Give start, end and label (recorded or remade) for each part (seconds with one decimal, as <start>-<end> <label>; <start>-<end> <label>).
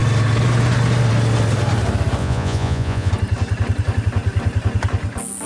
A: 0.0-2.2 recorded; 2.2-3.1 remade; 3.1-5.5 recorded